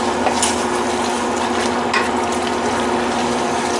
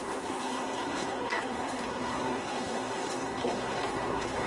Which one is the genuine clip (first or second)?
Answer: first